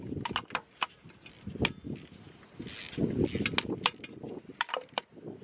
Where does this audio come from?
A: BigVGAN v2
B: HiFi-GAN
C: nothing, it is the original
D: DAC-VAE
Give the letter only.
C